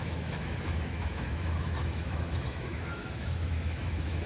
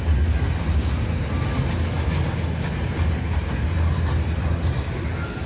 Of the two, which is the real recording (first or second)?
second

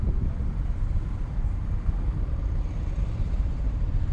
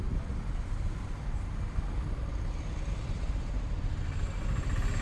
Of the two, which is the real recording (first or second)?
second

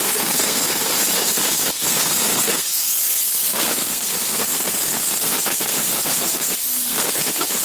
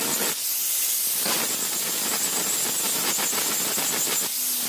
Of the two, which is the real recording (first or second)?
second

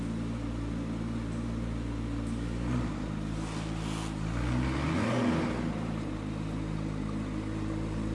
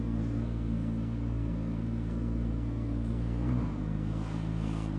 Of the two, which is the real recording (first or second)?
first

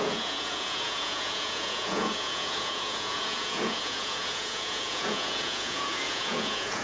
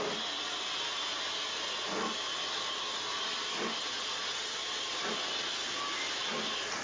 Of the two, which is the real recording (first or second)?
second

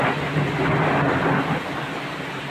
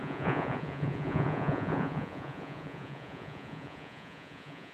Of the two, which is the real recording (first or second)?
first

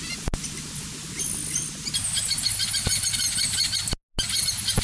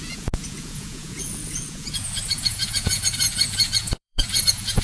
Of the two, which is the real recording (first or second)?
first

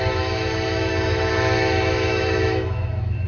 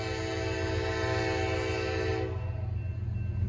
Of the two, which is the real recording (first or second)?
second